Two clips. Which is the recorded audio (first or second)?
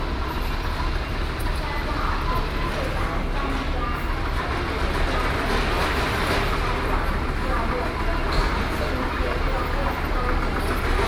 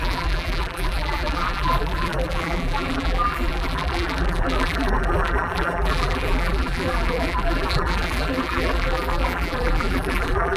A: first